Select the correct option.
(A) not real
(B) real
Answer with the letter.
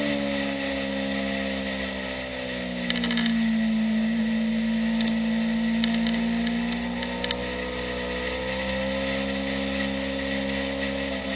B